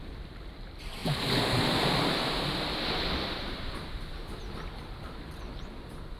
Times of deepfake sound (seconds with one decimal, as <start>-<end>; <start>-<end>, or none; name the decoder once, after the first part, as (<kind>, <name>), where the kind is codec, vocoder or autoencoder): none